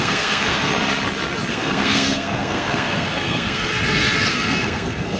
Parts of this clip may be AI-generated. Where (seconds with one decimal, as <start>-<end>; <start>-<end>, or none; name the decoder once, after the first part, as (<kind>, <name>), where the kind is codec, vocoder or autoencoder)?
0.0-0.7 (codec, SNAC); 1.5-3.7; 4.3-5.2